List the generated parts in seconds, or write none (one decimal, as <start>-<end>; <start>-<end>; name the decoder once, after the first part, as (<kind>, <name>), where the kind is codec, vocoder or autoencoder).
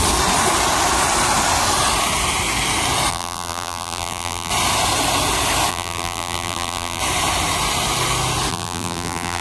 3.1-4.5 (vocoder, BigVGAN v2); 5.7-7.0; 8.5-9.4